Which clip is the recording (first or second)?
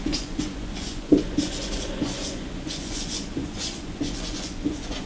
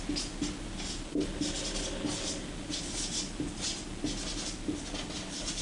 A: second